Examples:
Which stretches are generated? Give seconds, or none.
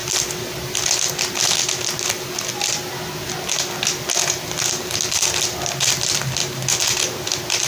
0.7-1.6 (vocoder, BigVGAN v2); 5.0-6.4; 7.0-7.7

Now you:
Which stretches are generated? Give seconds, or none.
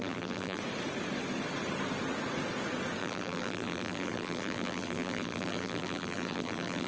0.0-0.6 (vocoder, BigVGAN v2); 3.0-6.9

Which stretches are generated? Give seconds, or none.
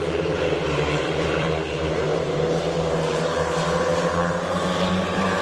0.0-5.4 (vocoder, BigVGAN v2)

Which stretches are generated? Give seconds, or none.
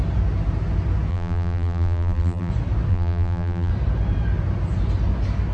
1.1-2.5 (vocoder, BigVGAN v2); 2.9-3.7